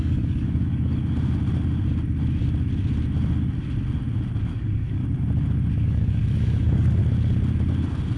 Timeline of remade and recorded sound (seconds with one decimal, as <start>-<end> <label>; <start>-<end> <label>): 0.0-1.0 remade; 1.0-4.5 recorded; 4.5-5.0 remade; 5.0-5.8 recorded; 5.8-7.0 remade; 7.0-8.2 recorded